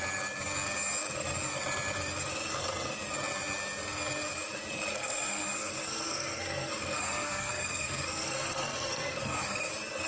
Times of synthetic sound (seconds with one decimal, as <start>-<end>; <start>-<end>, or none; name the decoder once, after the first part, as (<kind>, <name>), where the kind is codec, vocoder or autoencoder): 4.9-9.7 (codec, SNAC)

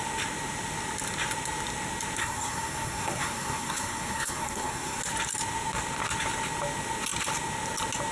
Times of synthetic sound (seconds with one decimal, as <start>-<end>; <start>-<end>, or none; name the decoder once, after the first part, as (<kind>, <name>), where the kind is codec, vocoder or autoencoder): 2.2-5.0 (codec, SNAC)